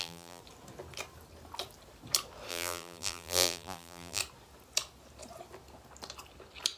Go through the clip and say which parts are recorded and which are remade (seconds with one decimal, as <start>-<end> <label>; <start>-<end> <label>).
0.0-0.4 remade; 0.4-2.5 recorded; 2.5-4.2 remade; 4.2-6.8 recorded